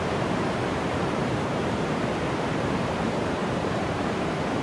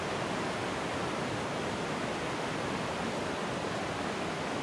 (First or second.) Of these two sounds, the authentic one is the second